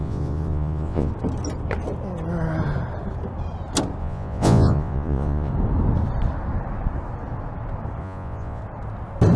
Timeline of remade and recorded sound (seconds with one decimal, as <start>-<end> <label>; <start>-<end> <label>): 0.0-1.1 remade; 1.1-4.0 recorded; 4.0-5.5 remade; 5.5-8.0 recorded; 8.0-8.6 remade; 8.6-9.4 recorded